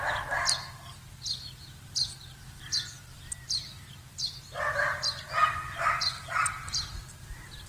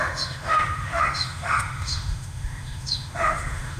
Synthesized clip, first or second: second